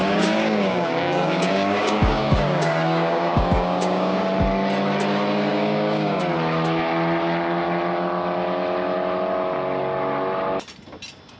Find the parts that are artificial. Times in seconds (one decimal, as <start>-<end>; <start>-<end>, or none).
0.0-4.2; 5.5-6.2